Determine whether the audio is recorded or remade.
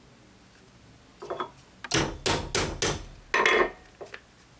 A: recorded